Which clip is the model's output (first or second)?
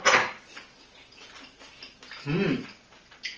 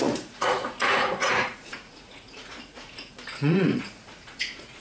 second